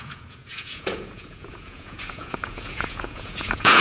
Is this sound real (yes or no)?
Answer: no